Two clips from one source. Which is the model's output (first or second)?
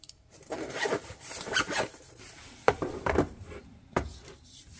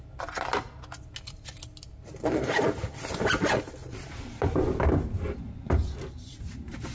first